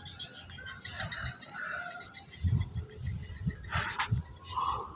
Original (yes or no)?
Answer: yes